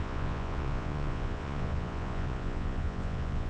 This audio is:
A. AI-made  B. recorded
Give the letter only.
A